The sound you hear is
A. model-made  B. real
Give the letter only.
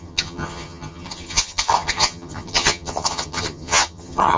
A